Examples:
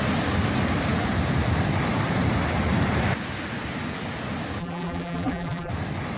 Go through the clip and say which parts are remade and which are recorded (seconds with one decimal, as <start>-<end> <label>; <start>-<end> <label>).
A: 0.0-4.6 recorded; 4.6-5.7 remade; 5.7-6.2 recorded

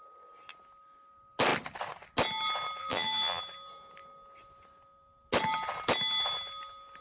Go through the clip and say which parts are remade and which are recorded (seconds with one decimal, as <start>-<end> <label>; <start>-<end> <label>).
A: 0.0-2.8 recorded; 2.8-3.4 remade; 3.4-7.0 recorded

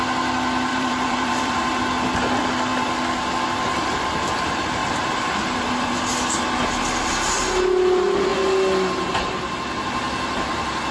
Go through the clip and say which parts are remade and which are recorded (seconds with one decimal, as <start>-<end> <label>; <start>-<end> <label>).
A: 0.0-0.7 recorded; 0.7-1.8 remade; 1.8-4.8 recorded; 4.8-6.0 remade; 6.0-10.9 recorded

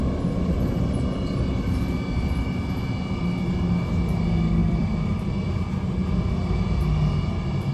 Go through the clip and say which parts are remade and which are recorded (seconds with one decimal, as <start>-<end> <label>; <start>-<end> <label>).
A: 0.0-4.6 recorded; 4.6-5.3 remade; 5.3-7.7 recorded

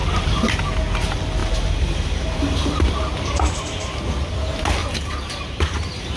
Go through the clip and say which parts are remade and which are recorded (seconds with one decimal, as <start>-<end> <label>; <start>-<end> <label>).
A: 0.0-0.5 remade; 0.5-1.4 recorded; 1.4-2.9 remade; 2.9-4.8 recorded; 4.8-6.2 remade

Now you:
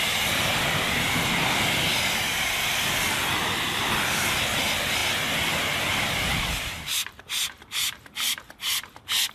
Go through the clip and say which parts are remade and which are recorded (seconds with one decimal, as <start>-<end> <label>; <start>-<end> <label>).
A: 0.0-9.3 recorded

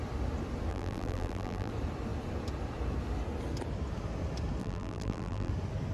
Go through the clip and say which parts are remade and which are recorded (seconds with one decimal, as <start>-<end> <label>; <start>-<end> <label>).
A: 0.0-0.7 recorded; 0.7-1.7 remade; 1.7-4.6 recorded; 4.6-5.5 remade; 5.5-5.9 recorded

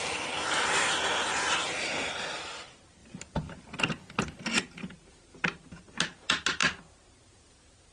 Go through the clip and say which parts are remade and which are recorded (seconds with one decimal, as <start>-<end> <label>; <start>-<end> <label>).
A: 0.0-7.9 recorded